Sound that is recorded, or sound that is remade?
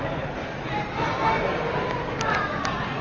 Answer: recorded